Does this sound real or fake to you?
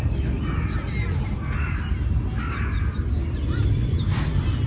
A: real